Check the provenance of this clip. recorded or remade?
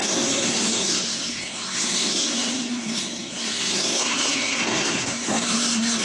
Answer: remade